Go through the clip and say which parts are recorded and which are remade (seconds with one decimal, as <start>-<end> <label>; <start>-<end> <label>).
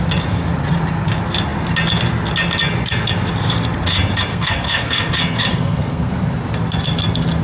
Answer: 0.0-4.3 recorded; 4.3-5.1 remade; 5.1-5.5 recorded; 5.5-6.1 remade; 6.1-7.4 recorded